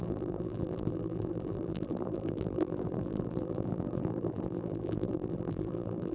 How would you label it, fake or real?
fake